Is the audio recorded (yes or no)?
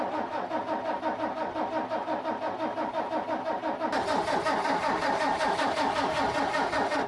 yes